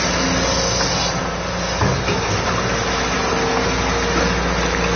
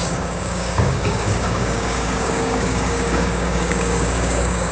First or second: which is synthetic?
second